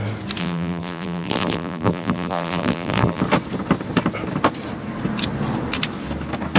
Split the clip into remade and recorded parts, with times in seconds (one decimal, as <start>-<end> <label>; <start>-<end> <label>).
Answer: 0.0-0.4 recorded; 0.4-3.2 remade; 3.2-6.6 recorded

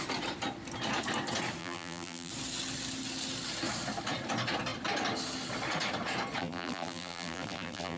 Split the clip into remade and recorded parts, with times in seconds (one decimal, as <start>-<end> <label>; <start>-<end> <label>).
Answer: 0.0-1.6 recorded; 1.6-2.3 remade; 2.3-6.4 recorded; 6.4-8.0 remade

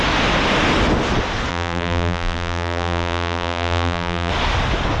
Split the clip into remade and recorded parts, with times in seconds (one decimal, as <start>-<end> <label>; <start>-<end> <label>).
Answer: 0.0-1.5 recorded; 1.5-4.3 remade; 4.3-5.0 recorded